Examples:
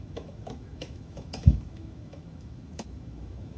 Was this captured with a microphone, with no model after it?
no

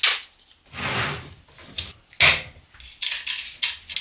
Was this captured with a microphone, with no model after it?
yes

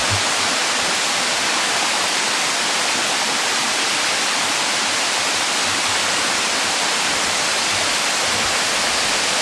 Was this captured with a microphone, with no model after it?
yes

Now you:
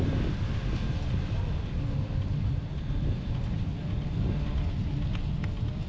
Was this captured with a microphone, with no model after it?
yes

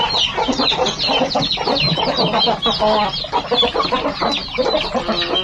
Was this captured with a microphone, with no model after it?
yes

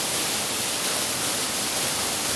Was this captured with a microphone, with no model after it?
yes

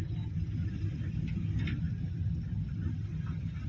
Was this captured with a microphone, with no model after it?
yes